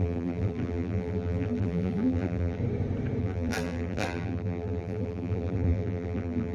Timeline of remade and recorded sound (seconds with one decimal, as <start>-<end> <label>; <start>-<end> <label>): 0.0-2.6 remade; 2.6-3.2 recorded; 3.2-6.5 remade